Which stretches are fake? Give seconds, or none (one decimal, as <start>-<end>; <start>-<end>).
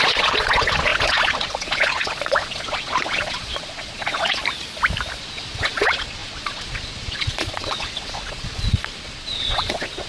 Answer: 0.0-4.4; 5.2-10.1